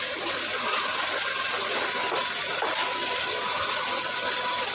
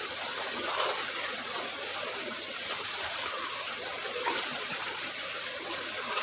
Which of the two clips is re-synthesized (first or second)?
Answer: second